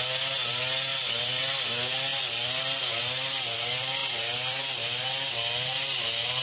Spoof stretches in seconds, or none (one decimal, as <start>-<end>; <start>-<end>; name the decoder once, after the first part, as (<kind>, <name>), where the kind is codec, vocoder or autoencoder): none